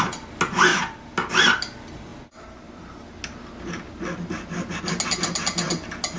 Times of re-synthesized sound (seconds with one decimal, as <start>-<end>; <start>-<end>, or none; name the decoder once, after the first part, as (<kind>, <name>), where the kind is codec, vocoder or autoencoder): none